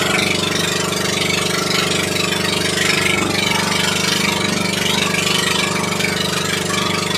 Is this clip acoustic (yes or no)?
yes